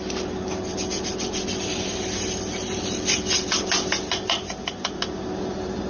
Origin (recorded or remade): recorded